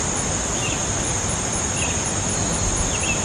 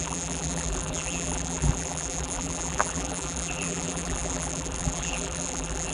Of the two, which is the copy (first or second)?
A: second